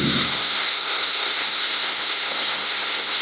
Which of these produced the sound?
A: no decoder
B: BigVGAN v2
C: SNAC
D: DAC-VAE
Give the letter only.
C